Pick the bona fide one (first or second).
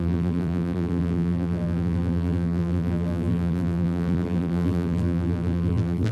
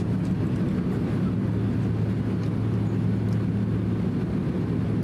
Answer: second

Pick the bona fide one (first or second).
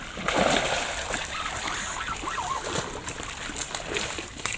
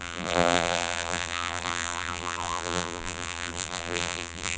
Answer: first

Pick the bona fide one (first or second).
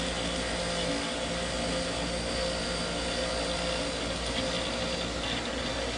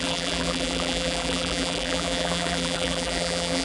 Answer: first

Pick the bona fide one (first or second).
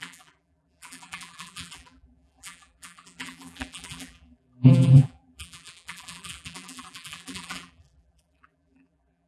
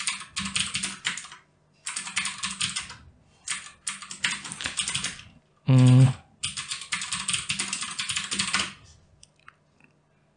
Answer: second